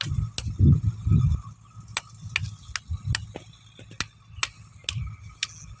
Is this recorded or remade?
recorded